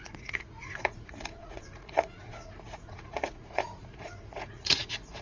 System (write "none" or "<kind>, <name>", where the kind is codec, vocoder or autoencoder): vocoder, Vocos